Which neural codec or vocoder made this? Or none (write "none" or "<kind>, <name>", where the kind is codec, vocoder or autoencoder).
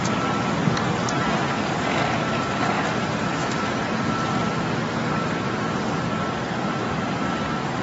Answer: none